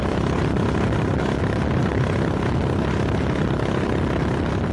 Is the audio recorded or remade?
recorded